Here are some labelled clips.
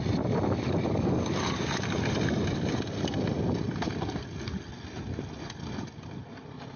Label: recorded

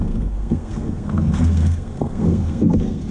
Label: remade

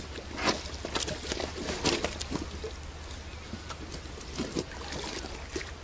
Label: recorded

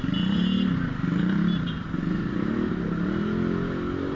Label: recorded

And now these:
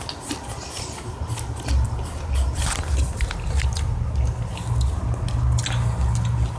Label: recorded